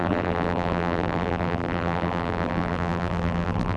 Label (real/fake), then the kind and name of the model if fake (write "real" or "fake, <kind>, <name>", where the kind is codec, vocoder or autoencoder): fake, vocoder, BigVGAN v2